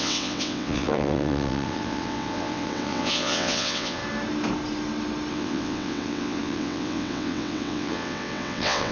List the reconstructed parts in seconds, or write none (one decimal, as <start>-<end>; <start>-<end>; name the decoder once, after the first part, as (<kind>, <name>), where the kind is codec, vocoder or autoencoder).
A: 0.0-4.0 (vocoder, WaveNeXt); 5.3-8.9